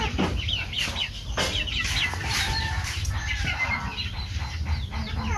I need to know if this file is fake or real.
real